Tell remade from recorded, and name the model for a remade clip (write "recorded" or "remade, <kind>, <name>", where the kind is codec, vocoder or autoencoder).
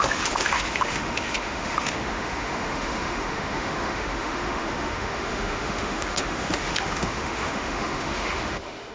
remade, autoencoder, DAC-VAE